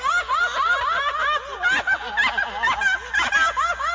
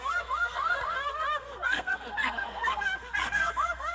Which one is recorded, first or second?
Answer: first